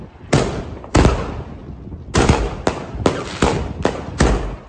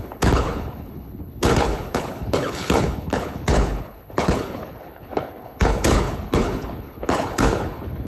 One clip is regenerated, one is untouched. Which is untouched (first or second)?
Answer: first